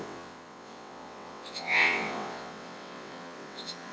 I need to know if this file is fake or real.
fake